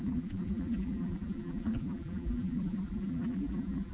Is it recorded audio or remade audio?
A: remade